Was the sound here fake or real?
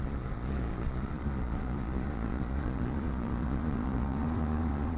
fake